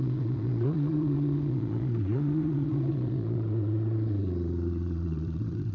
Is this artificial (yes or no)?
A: yes